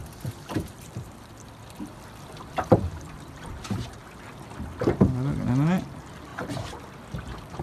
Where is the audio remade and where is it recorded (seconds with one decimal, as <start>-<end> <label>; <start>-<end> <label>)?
0.0-3.5 remade; 3.5-6.3 recorded; 6.3-7.6 remade